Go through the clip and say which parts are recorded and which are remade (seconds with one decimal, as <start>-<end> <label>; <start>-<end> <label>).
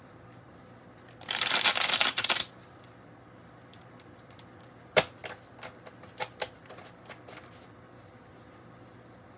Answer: 0.0-0.6 remade; 0.6-1.7 recorded; 1.7-5.2 remade; 5.2-9.4 recorded